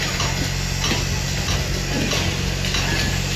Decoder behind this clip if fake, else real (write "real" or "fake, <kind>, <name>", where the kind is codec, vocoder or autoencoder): real